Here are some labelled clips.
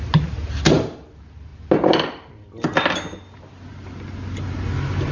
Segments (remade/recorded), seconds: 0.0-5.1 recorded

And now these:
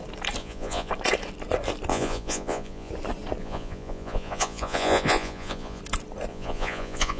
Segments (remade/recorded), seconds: 0.0-0.4 recorded; 0.4-0.9 remade; 0.9-1.9 recorded; 1.9-2.9 remade; 2.9-3.4 recorded; 3.4-5.8 remade; 5.8-6.3 recorded; 6.3-7.2 remade

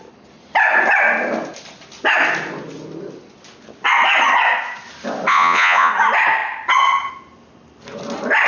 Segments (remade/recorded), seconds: 0.0-5.3 recorded; 5.3-5.9 remade; 5.9-8.5 recorded

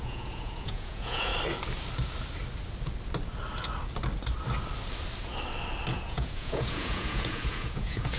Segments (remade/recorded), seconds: 0.0-1.3 remade; 1.3-5.9 recorded; 5.9-8.2 remade

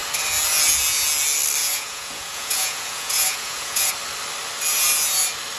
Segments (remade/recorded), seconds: 0.0-1.6 recorded; 1.6-3.9 remade; 3.9-5.6 recorded

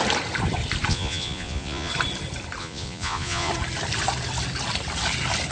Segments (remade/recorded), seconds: 0.0-0.9 recorded; 0.9-1.9 remade; 1.9-2.6 recorded; 2.6-3.5 remade; 3.5-5.5 recorded

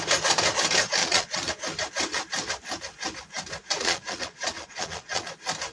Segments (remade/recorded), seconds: 0.0-1.0 recorded; 1.0-1.5 remade; 1.5-3.6 recorded; 3.6-5.3 remade; 5.3-5.7 recorded